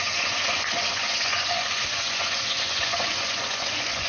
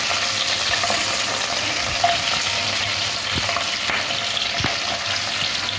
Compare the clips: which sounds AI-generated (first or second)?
first